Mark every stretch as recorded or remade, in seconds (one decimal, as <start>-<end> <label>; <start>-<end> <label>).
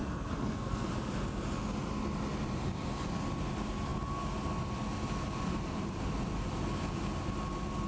0.0-0.9 remade; 0.9-7.9 recorded